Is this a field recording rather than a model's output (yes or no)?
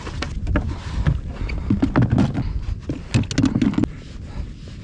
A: yes